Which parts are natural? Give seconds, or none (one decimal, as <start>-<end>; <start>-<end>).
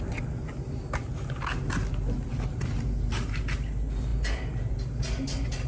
0.0-5.7